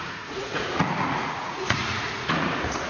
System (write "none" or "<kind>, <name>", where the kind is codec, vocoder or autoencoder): vocoder, Vocos